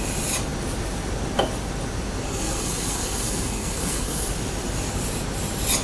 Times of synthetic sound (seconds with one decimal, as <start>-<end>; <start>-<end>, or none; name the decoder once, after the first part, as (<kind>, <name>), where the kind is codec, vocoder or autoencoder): 2.3-4.3 (codec, SNAC)

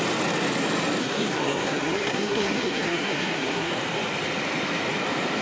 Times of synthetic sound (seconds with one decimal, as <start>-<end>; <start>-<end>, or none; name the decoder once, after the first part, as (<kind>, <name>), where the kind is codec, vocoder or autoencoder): 1.0-3.7 (codec, SNAC)

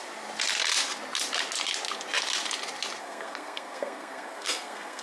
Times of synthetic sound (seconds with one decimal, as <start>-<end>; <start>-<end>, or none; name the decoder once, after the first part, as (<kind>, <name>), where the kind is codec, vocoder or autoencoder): 3.0-5.0 (codec, SNAC)

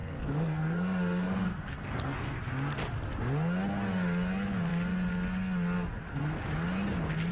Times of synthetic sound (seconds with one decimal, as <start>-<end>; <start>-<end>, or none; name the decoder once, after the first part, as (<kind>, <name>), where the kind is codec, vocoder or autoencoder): 0.0-2.4 (codec, SNAC)